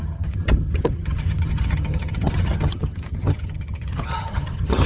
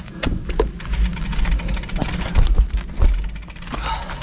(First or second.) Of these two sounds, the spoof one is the first